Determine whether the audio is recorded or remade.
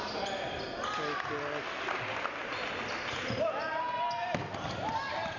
recorded